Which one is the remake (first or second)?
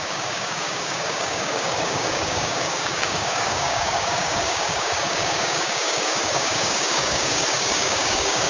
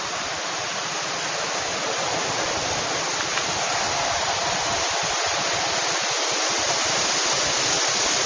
first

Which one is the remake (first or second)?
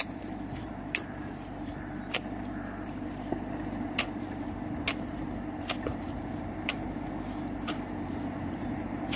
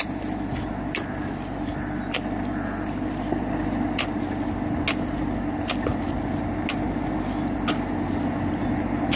first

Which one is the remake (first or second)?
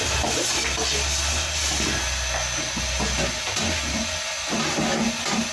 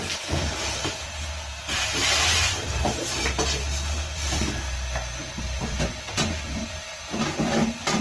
second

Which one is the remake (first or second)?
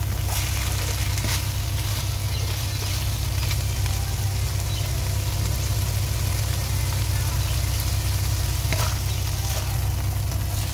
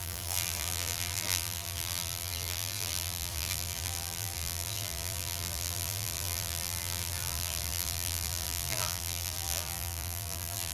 second